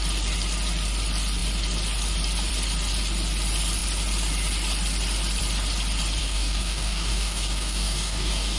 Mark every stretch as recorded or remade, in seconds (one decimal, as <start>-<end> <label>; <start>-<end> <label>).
0.0-6.2 recorded; 6.2-8.6 remade